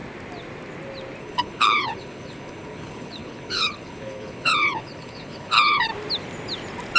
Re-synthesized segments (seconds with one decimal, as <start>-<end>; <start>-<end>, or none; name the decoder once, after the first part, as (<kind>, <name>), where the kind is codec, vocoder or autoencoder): 1.2-5.9 (codec, HILCodec)